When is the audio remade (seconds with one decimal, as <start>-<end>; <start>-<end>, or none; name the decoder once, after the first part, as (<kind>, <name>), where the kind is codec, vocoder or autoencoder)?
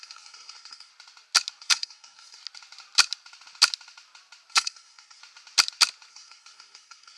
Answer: 0.0-0.9 (codec, SNAC); 1.6-2.4; 4.5-5.2; 6.1-7.2